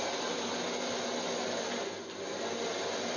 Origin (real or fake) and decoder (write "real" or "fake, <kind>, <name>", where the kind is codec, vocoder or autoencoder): real